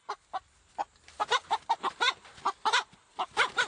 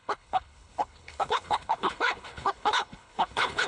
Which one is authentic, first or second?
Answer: first